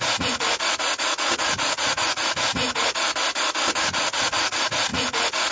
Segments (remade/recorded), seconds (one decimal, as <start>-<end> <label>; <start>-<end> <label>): 0.0-3.1 remade; 3.1-3.8 recorded; 3.8-5.5 remade